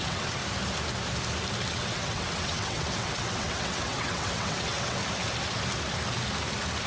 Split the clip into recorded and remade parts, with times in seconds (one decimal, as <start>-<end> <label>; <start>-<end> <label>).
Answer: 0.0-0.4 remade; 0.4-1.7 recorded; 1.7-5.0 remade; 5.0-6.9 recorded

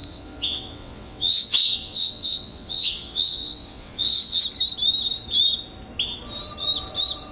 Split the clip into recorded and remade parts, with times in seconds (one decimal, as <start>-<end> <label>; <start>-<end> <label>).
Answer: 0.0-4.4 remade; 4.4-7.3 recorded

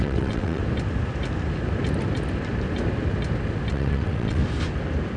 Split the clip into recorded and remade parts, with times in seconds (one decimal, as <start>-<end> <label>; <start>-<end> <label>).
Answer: 0.0-0.6 remade; 0.6-3.7 recorded; 3.7-4.4 remade; 4.4-5.2 recorded